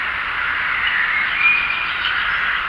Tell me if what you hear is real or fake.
real